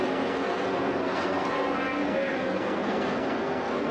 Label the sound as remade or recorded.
remade